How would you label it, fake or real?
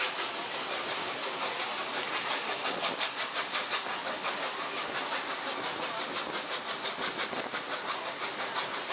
real